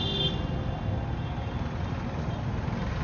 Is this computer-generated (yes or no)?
no